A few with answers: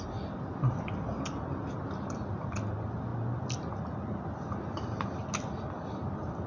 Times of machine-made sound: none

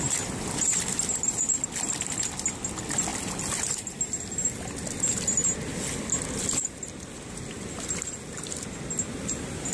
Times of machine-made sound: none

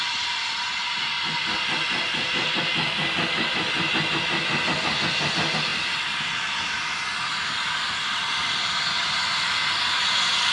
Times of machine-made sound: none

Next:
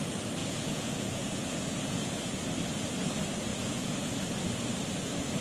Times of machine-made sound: 0.4-2.1; 3.5-4.1

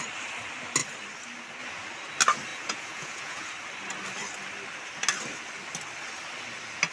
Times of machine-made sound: 2.5-3.5

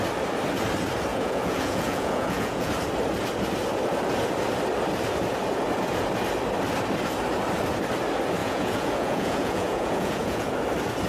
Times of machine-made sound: 1.1-2.7; 8.4-10.5

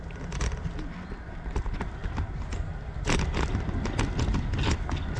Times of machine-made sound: none